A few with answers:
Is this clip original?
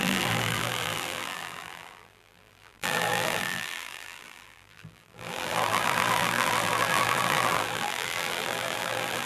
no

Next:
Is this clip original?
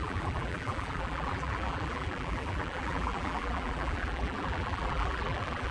no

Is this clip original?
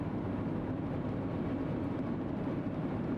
no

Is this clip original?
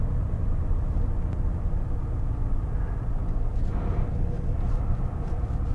no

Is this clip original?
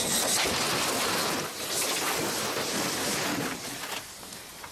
yes